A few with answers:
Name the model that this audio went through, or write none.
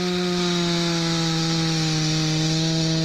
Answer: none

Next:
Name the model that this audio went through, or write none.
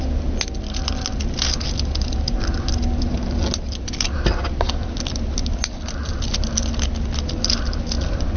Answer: none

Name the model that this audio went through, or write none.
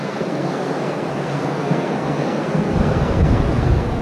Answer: codec, SNAC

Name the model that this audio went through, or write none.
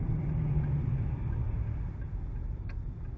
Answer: none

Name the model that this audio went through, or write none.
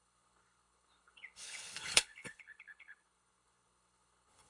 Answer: codec, HILCodec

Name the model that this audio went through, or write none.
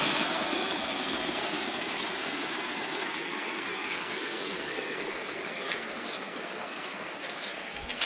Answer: codec, SNAC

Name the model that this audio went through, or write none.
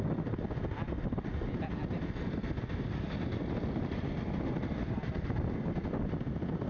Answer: none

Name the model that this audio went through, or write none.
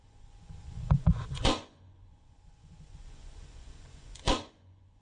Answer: vocoder, Vocos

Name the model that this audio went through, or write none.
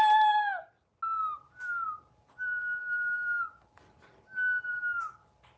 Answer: none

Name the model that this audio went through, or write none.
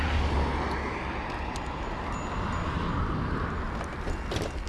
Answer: none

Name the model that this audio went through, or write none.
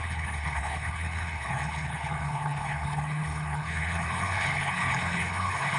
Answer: codec, HILCodec